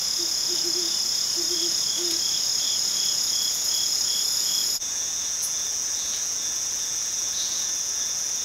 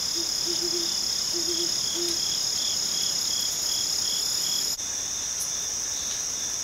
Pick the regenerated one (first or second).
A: first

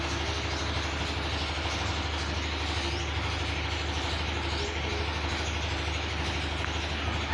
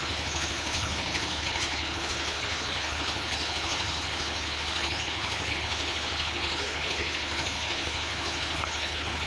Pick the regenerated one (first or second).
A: second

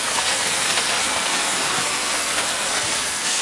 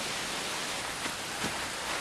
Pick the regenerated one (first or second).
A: first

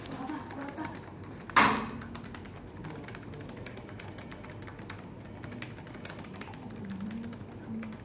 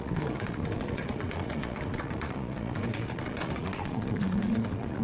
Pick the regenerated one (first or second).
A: second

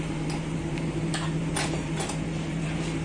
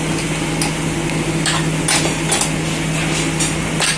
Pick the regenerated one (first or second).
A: first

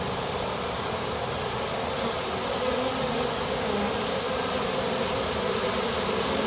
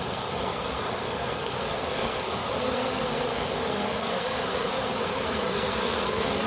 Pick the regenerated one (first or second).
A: second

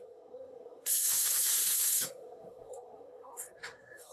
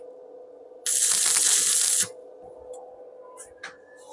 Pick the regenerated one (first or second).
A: first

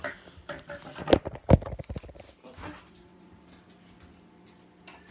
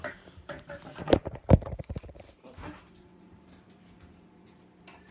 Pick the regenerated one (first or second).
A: second